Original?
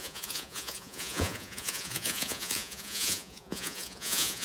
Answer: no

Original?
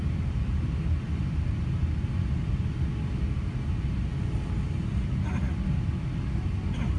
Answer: yes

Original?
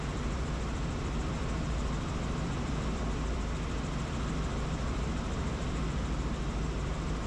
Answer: no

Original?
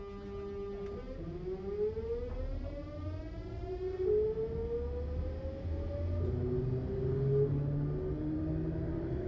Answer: yes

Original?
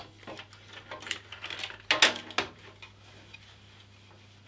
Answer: yes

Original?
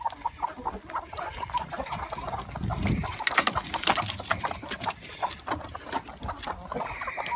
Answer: yes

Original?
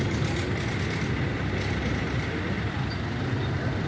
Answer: yes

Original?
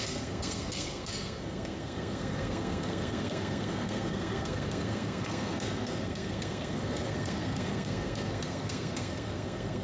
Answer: no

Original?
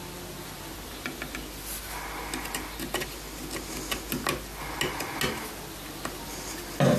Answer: yes